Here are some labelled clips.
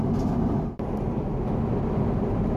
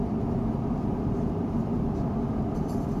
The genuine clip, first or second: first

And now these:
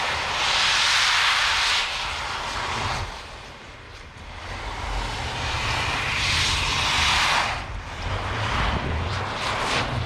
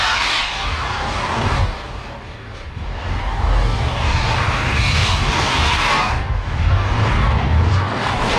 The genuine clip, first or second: first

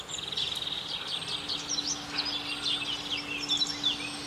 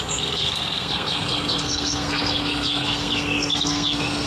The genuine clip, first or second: first